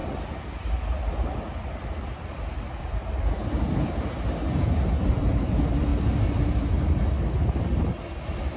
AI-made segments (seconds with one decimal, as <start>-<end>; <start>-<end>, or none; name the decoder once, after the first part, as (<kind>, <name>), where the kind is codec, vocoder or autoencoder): 2.8-3.4 (vocoder, BigVGAN v2); 5.1-5.9; 7.8-8.6